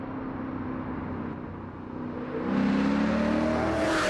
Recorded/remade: recorded